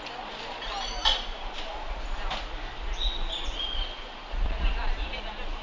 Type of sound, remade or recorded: recorded